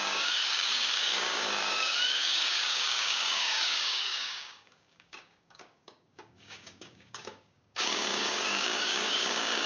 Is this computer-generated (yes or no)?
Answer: yes